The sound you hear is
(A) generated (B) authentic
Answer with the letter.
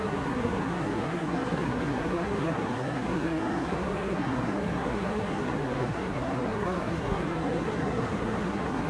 A